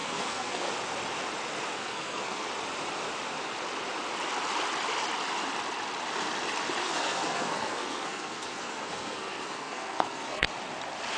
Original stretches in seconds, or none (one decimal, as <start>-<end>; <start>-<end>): 0.7-1.8; 2.5-6.8; 10.5-11.2